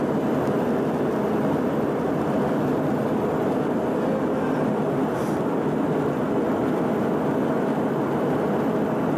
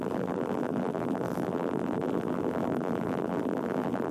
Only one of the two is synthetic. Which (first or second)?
second